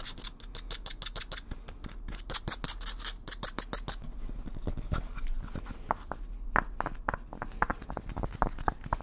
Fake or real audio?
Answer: real